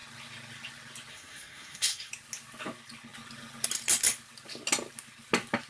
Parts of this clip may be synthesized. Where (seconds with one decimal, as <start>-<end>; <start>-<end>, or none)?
1.1-2.1